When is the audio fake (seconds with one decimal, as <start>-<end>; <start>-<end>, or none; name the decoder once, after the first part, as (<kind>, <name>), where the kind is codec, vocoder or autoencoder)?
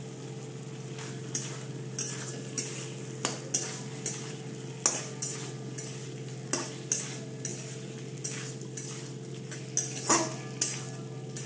none